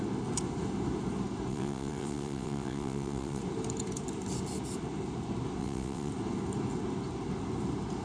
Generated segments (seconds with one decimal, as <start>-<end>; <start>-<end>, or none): 1.5-3.4; 5.6-6.1